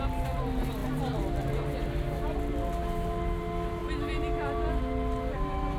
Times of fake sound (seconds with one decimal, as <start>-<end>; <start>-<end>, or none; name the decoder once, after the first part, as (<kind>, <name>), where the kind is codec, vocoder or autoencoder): 0.8-1.5 (vocoder, BigVGAN v2)

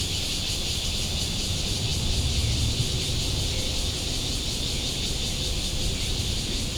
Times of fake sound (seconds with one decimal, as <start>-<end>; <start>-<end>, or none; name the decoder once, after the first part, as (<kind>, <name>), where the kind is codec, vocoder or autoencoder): none